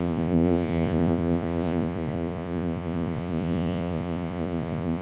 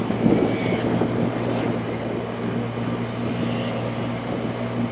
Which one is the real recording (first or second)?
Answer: second